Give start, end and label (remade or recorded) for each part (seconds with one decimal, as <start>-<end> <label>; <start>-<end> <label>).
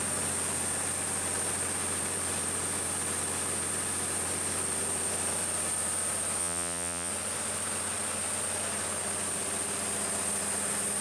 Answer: 0.0-6.4 recorded; 6.4-7.1 remade; 7.1-11.0 recorded